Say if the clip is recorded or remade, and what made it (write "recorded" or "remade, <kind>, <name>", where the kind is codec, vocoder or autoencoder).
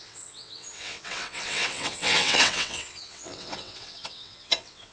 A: remade, vocoder, WaveNeXt